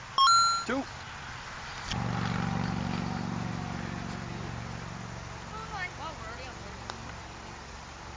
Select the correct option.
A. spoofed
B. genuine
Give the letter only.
B